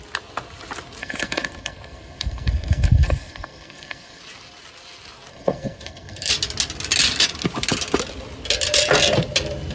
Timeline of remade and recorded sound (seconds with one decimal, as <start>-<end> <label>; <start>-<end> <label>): 0.0-1.0 recorded; 1.0-4.2 remade; 4.2-5.3 recorded; 5.3-6.3 remade; 6.3-9.7 recorded